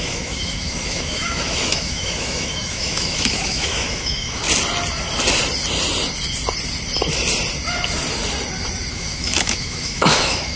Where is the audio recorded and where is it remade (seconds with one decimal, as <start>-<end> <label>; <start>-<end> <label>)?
0.0-4.4 remade; 4.4-8.9 recorded; 8.9-10.6 remade